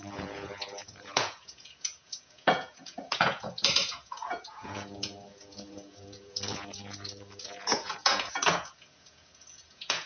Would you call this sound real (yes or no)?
no